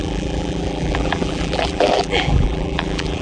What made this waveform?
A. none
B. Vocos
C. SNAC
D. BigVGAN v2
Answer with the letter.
D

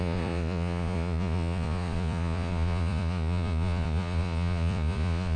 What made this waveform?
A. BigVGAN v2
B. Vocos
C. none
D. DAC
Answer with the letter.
B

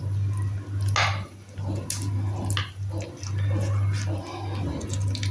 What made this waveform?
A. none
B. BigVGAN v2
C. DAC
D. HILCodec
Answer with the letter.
A